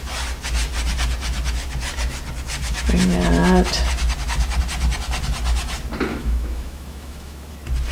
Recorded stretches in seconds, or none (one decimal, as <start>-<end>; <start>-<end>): 0.0-6.1; 7.5-7.9

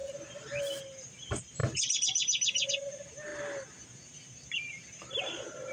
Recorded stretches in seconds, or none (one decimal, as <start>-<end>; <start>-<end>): 0.0-5.7